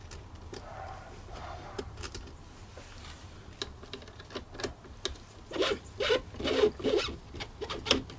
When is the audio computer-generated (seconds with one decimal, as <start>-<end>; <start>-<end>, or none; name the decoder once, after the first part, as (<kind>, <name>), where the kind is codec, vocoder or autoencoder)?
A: none